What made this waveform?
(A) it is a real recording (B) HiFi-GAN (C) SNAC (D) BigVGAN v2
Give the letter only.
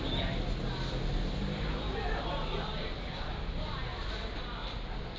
A